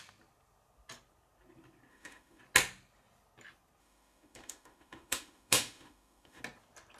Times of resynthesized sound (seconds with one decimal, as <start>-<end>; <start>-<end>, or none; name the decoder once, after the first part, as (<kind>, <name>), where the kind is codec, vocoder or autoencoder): 1.9-2.4 (autoencoder, DAC-VAE); 3.8-6.4